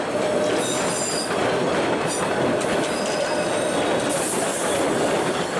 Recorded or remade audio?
recorded